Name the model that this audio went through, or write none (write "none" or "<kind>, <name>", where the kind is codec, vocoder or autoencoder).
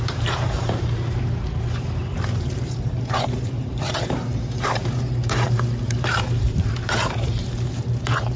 vocoder, BigVGAN v2